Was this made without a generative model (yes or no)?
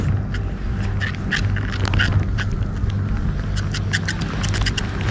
yes